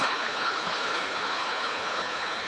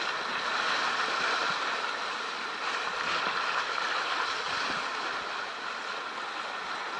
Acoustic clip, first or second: second